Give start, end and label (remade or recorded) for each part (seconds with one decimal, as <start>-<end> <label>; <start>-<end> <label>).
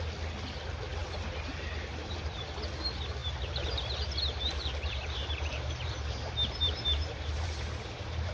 0.0-1.0 recorded; 1.0-2.4 remade; 2.4-3.2 recorded; 3.2-8.3 remade